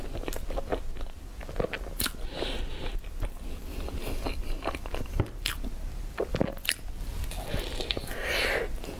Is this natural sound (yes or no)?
yes